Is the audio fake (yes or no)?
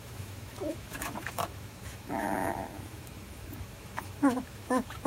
yes